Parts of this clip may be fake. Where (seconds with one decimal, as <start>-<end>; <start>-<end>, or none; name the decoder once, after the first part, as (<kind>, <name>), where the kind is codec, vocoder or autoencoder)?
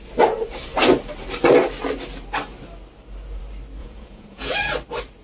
3.8-4.5 (vocoder, Vocos)